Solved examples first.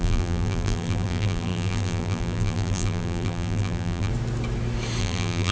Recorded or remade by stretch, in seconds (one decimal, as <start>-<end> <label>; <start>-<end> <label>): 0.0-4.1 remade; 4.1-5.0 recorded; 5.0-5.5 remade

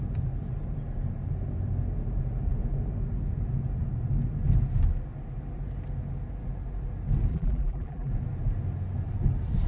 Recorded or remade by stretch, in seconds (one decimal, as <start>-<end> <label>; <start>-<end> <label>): 0.0-7.3 recorded; 7.3-8.1 remade; 8.1-9.7 recorded

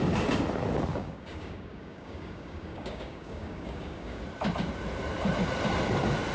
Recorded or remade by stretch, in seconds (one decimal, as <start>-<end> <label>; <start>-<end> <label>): 0.0-0.9 recorded; 0.9-4.2 remade; 4.2-6.3 recorded